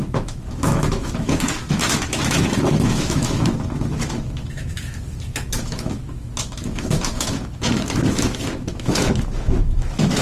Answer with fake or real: fake